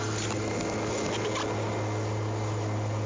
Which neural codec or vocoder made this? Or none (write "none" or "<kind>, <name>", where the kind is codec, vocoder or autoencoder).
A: none